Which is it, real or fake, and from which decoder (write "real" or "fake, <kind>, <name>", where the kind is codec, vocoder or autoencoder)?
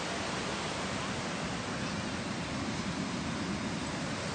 real